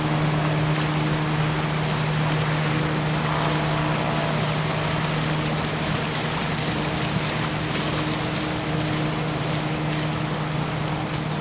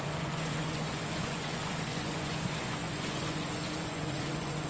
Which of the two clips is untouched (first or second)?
first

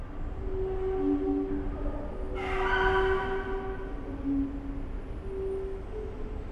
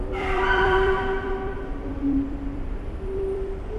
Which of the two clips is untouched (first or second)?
first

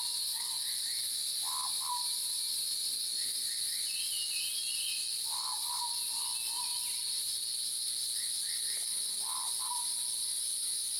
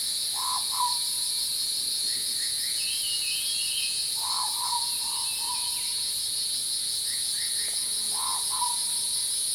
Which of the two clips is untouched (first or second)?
first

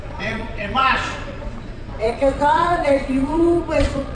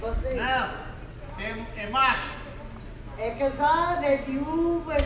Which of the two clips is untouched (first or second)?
second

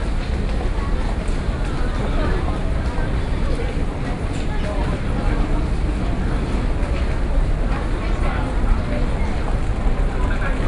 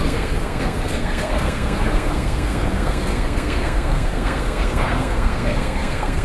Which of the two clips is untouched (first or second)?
first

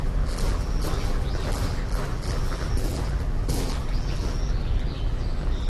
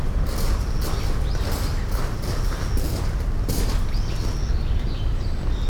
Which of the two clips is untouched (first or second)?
second